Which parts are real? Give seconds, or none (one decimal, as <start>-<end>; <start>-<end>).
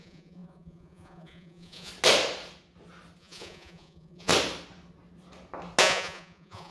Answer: 1.9-3.2; 4.3-5.8